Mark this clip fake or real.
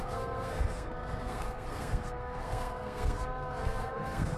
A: fake